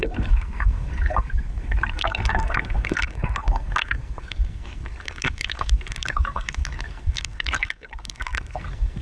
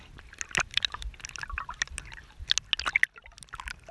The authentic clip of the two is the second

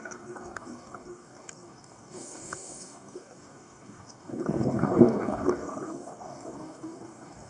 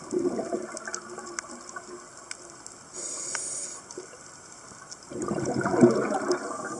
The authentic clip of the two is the second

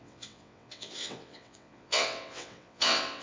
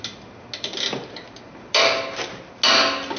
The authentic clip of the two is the second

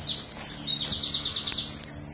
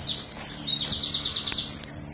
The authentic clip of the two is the first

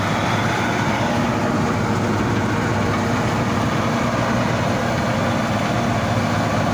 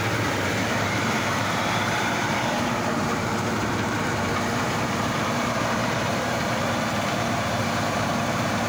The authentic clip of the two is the first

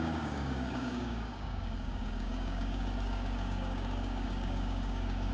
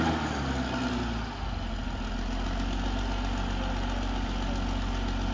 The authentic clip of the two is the second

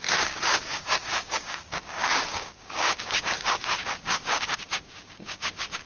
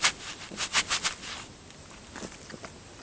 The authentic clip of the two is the second